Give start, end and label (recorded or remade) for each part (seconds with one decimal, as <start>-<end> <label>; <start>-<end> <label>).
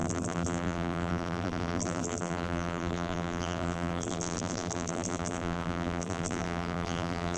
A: 0.0-7.4 remade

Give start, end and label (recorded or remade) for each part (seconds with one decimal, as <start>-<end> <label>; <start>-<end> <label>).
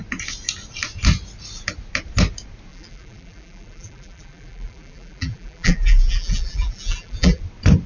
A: 0.0-2.7 recorded; 2.7-7.4 remade; 7.4-7.9 recorded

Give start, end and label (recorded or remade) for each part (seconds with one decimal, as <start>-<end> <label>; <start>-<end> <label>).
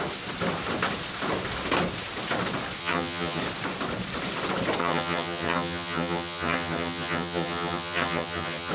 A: 0.0-2.8 recorded; 2.8-3.4 remade; 3.4-4.8 recorded; 4.8-8.7 remade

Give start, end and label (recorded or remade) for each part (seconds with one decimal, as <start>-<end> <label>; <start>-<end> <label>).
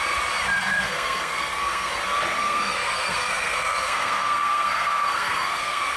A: 0.0-0.7 recorded; 0.7-1.9 remade; 1.9-2.4 recorded; 2.4-6.0 remade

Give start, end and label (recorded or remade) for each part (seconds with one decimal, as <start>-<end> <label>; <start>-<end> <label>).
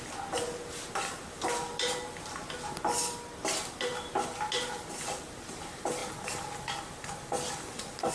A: 0.0-8.1 recorded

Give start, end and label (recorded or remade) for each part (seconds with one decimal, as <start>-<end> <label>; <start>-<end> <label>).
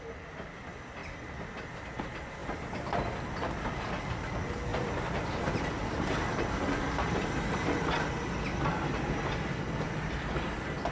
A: 0.0-1.0 recorded; 1.0-2.0 remade; 2.0-2.4 recorded; 2.4-3.4 remade; 3.4-4.7 recorded; 4.7-8.1 remade; 8.1-10.9 recorded